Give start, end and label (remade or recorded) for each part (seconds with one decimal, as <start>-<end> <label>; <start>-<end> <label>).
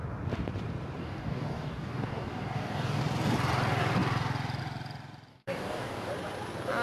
0.0-1.0 recorded; 1.0-3.0 remade; 3.0-5.3 recorded; 5.3-6.1 remade; 6.1-6.8 recorded